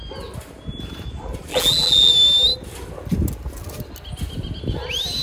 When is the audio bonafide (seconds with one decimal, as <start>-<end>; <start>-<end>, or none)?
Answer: 0.0-1.5; 2.1-5.2